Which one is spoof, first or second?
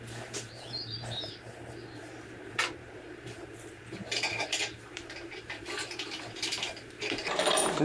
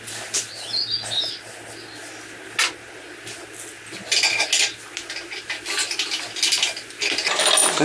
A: first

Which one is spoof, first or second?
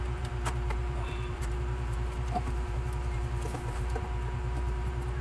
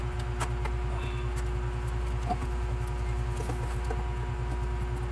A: first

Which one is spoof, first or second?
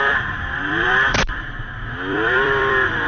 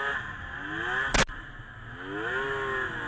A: first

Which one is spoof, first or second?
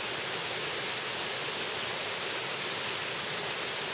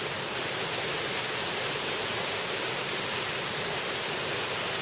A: second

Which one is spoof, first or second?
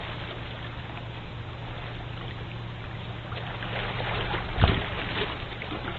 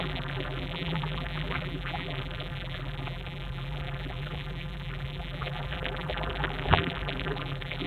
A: second